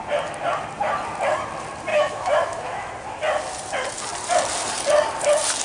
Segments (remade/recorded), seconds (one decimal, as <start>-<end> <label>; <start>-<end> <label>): 0.0-1.9 recorded; 1.9-2.9 remade; 2.9-5.6 recorded